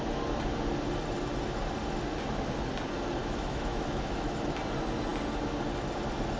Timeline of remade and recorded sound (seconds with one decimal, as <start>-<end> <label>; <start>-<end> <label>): 0.0-3.2 recorded; 3.2-4.6 remade; 4.6-6.4 recorded